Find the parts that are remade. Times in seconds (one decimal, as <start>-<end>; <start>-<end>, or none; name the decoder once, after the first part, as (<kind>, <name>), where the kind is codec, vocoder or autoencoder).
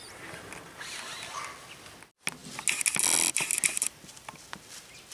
none